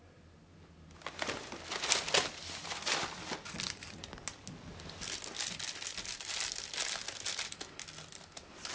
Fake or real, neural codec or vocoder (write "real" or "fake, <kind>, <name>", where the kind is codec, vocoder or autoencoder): real